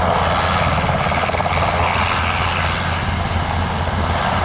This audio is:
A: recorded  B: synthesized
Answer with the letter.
A